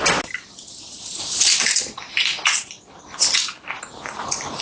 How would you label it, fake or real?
real